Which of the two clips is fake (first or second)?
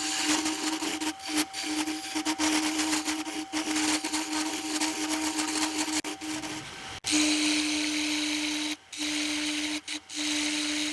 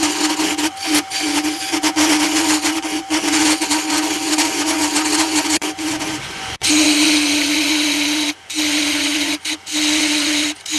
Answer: second